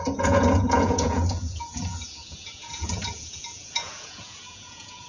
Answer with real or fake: fake